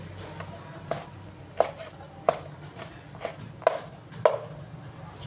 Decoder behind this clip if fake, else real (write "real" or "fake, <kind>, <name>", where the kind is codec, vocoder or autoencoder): real